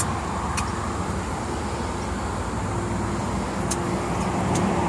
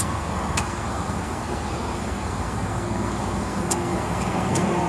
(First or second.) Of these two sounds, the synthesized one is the second